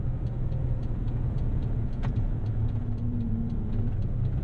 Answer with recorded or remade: remade